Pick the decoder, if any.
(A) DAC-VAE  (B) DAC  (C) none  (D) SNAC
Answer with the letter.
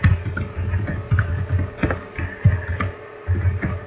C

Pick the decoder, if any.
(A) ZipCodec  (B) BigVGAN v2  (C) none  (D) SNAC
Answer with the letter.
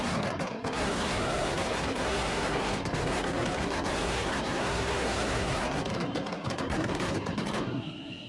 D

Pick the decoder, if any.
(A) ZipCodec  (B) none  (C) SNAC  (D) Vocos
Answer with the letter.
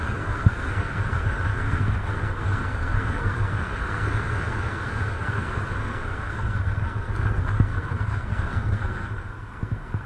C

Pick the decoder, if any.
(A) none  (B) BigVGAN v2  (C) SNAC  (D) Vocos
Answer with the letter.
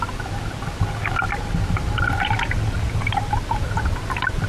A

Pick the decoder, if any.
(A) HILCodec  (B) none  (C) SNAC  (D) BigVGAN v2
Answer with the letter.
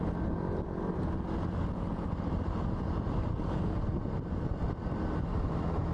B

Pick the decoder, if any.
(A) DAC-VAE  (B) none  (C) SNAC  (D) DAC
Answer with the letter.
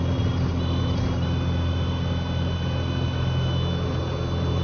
B